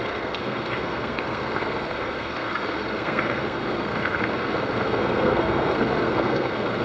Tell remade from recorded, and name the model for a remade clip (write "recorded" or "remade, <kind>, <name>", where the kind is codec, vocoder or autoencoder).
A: remade, codec, SNAC